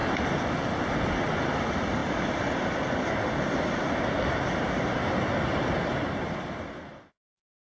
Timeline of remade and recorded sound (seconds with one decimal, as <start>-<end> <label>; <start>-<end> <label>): 0.0-7.7 recorded